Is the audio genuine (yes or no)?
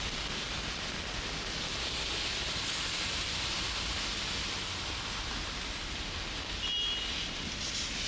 yes